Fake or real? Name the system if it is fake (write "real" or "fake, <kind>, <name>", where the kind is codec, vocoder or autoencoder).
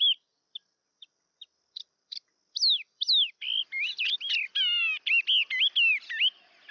real